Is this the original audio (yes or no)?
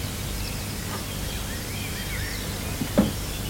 yes